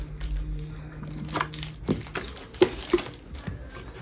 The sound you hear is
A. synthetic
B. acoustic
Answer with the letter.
B